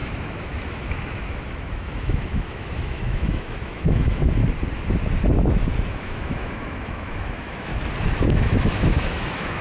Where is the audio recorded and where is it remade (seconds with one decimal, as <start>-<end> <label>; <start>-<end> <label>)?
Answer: 0.0-4.4 remade; 4.4-5.9 recorded; 5.9-7.7 remade; 7.7-8.3 recorded; 8.3-9.6 remade